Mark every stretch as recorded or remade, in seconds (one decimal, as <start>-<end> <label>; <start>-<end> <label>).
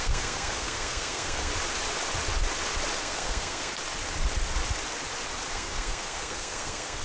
0.0-1.5 remade; 1.5-3.0 recorded; 3.0-3.7 remade; 3.7-5.5 recorded; 5.5-7.0 remade